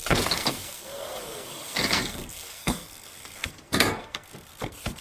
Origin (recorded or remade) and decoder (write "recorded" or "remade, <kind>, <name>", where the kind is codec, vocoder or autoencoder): remade, codec, SNAC